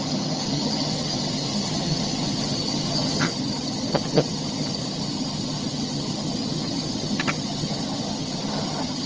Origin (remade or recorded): remade